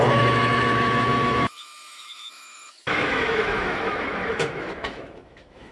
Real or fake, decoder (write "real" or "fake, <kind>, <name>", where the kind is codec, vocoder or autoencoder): fake, autoencoder, DAC-VAE